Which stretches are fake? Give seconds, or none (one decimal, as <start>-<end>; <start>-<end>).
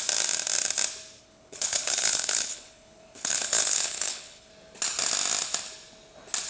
1.2-4.5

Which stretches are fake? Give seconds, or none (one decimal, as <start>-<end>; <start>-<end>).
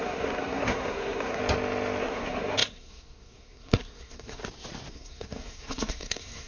0.0-1.4; 2.0-4.4; 4.9-6.5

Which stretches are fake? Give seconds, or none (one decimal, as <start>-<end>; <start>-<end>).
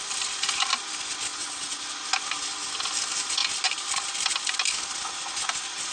1.3-1.8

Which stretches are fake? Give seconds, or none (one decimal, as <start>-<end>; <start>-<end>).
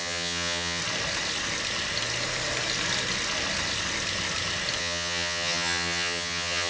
0.0-0.8; 4.8-6.7